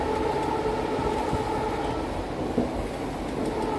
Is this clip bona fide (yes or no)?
yes